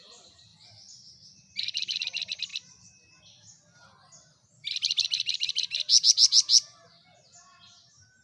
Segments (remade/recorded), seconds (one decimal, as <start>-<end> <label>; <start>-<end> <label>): 0.0-0.5 recorded; 0.5-2.0 remade; 2.0-8.2 recorded